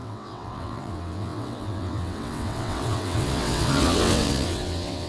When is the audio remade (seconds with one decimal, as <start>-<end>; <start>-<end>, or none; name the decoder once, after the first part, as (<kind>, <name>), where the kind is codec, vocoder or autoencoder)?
0.0-5.1 (vocoder, WaveNeXt)